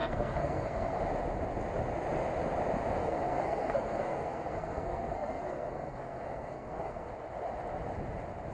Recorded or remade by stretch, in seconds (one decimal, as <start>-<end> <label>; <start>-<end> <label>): 0.0-1.0 remade; 1.0-3.0 recorded; 3.0-7.1 remade; 7.1-8.5 recorded